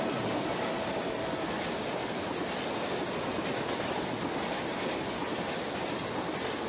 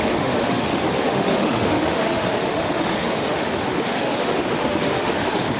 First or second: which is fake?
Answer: second